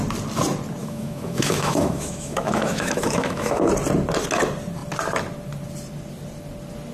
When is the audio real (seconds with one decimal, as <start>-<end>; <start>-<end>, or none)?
0.0-0.8; 3.7-6.9